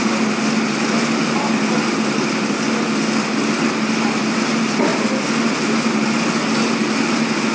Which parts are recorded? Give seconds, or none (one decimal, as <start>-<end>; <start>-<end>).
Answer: 0.0-7.5